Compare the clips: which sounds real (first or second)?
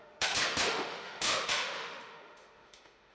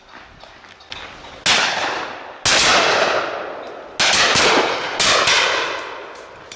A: second